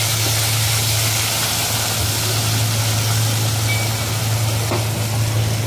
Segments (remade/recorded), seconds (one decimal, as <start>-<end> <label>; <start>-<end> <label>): 0.0-5.7 recorded